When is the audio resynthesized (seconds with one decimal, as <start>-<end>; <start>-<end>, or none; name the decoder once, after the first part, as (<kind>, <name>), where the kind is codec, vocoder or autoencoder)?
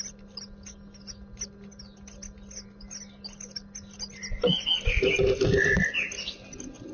none